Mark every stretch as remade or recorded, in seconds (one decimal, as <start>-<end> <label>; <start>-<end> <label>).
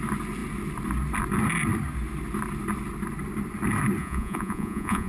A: 0.0-4.0 recorded; 4.0-5.1 remade